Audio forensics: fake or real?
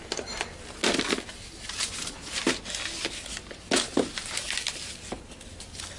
real